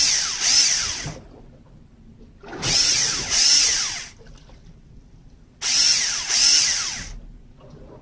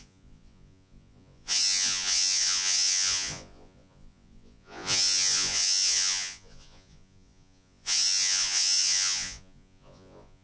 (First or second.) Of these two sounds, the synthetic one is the second